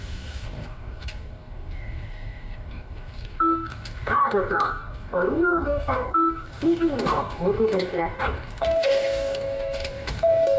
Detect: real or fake fake